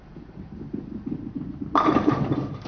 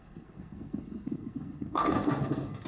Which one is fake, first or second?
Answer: second